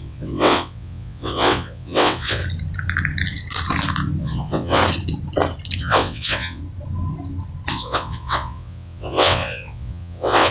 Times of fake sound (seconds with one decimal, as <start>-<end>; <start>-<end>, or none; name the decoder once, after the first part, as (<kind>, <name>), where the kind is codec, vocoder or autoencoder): 0.0-2.4 (vocoder, WaveNeXt); 4.2-4.8; 5.8-6.6; 7.7-10.5